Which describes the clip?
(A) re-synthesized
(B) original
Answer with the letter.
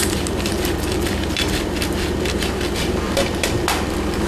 A